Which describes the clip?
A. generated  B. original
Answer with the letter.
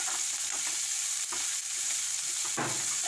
B